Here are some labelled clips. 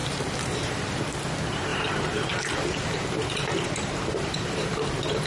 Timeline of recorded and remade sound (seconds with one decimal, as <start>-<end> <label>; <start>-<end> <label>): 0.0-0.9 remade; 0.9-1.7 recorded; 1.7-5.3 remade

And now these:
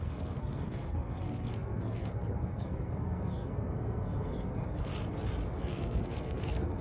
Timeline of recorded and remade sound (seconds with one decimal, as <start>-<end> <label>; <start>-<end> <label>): 0.0-4.9 remade; 4.9-5.6 recorded; 5.6-6.8 remade

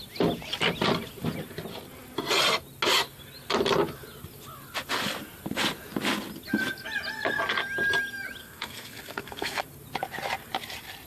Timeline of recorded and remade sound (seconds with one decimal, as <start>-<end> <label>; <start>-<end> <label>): 0.0-8.4 recorded; 8.4-9.6 remade; 9.6-11.1 recorded